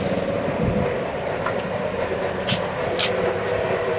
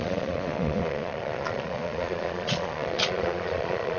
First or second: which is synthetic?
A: second